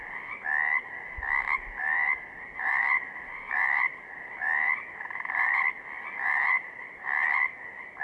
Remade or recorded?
remade